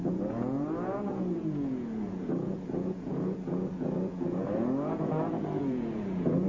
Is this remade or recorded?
remade